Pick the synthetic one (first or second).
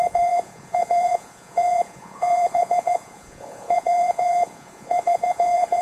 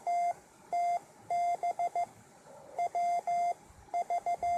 first